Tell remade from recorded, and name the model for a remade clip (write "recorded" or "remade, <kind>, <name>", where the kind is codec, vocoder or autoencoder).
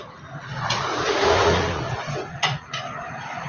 remade, vocoder, Vocos